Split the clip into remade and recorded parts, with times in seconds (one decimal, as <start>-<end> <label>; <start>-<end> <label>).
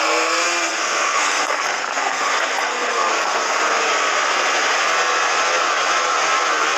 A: 0.0-3.4 remade; 3.4-6.8 recorded